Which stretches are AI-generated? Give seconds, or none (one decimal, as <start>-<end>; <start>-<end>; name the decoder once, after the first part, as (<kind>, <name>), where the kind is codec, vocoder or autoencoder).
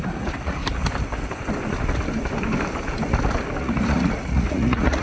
0.0-0.6 (vocoder, Vocos); 3.6-5.0